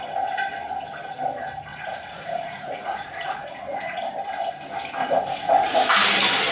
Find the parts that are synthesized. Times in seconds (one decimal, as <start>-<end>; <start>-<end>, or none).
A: 1.7-4.0; 5.0-5.9